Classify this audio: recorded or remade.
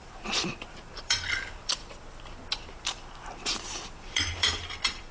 remade